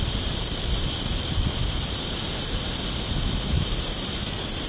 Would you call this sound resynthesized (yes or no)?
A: no